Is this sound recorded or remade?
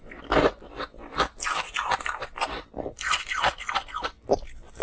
recorded